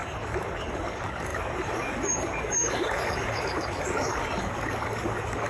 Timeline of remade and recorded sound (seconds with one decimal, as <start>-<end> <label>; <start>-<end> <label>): 0.0-5.5 remade